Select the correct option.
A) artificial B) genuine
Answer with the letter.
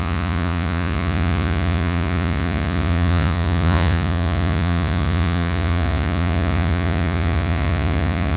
A